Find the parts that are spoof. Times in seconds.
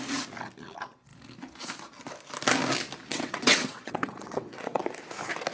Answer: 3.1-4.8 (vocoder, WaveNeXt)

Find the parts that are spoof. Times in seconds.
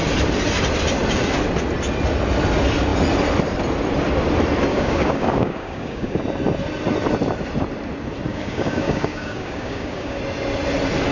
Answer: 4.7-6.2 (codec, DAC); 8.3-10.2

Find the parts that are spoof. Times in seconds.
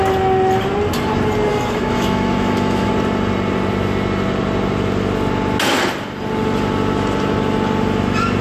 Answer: 1.5-2.9 (autoencoder, DAC-VAE)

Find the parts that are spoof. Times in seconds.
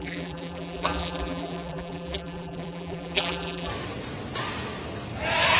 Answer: 0.0-3.7 (vocoder, BigVGAN v2)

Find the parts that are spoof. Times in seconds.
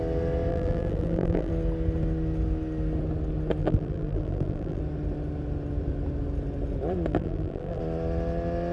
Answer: 0.5-1.5 (vocoder, BigVGAN v2); 3.6-4.8; 7.1-7.8